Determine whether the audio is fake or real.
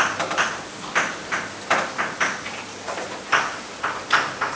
real